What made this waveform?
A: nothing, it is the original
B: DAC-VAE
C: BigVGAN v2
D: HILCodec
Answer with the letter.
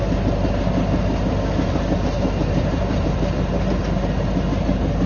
A